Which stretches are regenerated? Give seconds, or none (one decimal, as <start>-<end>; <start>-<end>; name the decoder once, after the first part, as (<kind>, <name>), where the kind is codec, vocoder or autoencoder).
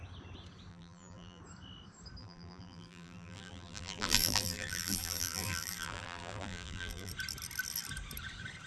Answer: 0.7-1.4 (vocoder, BigVGAN v2); 2.2-7.1